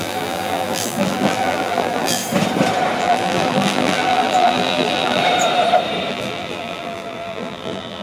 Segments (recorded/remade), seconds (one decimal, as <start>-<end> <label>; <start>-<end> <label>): 0.0-2.2 remade; 2.2-3.0 recorded; 3.0-5.2 remade; 5.2-6.1 recorded; 6.1-8.0 remade